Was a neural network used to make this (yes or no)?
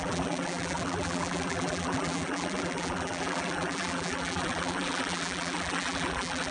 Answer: yes